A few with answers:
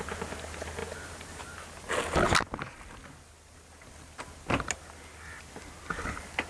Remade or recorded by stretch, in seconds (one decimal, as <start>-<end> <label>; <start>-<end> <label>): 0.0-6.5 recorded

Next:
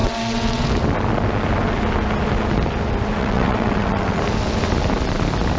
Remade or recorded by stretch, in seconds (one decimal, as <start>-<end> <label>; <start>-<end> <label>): 0.0-0.7 remade; 0.7-3.2 recorded; 3.2-4.2 remade; 4.2-5.6 recorded

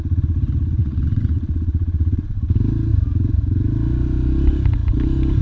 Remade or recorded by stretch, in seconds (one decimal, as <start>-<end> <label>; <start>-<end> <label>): 0.0-0.8 recorded; 0.8-2.4 remade; 2.4-5.4 recorded